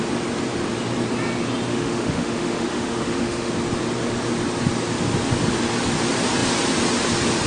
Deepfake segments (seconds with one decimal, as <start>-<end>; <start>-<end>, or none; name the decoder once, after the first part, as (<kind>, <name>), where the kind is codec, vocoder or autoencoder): 1.7-3.5 (autoencoder, DAC-VAE)